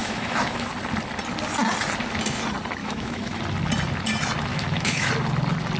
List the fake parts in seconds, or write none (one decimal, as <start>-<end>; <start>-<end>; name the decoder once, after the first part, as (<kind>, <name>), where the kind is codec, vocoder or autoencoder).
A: 0.0-0.7 (autoencoder, DAC-VAE); 2.8-3.4; 4.5-5.1